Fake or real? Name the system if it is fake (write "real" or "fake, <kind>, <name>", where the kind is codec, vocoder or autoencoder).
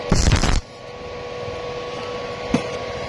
real